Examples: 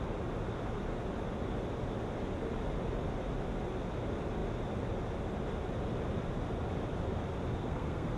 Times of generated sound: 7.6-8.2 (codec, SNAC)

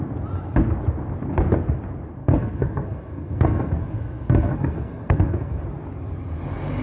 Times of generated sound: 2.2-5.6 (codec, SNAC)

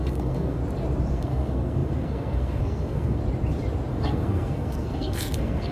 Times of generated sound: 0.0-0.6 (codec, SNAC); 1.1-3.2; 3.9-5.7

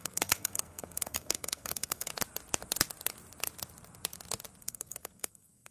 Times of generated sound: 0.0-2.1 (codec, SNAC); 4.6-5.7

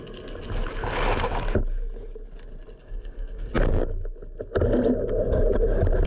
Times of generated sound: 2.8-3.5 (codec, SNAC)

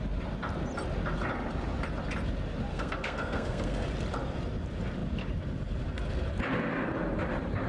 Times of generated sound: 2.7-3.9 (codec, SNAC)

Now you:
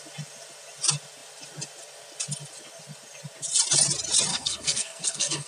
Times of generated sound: 4.3-5.5 (codec, SNAC)